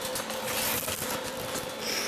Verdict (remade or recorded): recorded